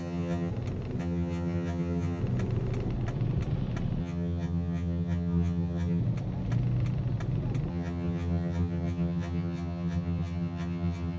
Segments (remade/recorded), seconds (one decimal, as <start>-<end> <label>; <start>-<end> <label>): 0.0-0.5 remade; 0.5-1.0 recorded; 1.0-2.2 remade; 2.2-4.0 recorded; 4.0-6.0 remade; 6.0-7.7 recorded; 7.7-11.2 remade